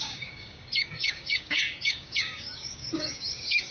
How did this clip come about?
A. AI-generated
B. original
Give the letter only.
A